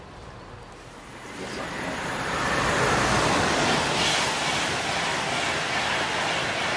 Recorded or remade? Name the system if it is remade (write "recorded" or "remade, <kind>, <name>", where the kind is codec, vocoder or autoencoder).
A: recorded